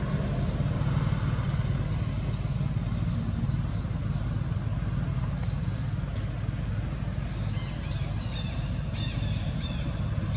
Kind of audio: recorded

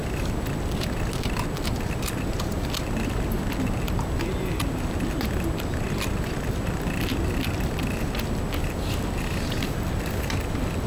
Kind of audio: recorded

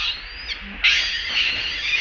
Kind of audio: recorded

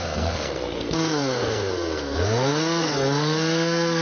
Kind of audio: remade